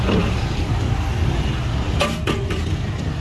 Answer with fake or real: real